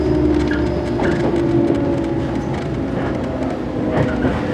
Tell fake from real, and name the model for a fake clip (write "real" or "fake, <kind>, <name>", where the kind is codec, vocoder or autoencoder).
real